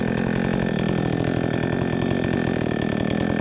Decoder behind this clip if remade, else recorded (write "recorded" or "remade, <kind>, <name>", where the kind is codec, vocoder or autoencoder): recorded